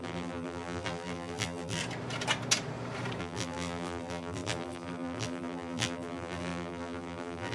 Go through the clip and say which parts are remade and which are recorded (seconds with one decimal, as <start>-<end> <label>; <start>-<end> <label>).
0.0-1.8 remade; 1.8-3.2 recorded; 3.2-7.5 remade